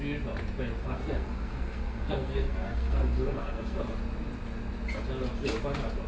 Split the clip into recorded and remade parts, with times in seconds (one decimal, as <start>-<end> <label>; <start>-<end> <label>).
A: 0.0-0.8 recorded; 0.8-3.8 remade; 3.8-6.1 recorded